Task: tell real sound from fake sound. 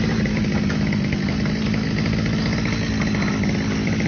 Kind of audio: real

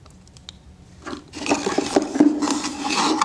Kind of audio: real